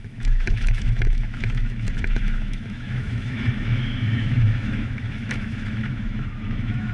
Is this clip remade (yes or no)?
yes